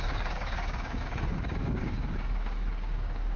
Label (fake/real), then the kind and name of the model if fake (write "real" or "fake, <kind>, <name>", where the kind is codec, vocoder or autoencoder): fake, codec, DAC